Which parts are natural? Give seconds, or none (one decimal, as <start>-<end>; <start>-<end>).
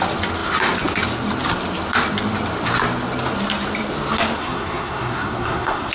0.0-4.4